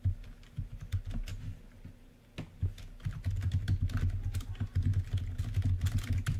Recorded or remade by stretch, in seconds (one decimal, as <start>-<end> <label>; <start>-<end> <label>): 0.0-6.4 recorded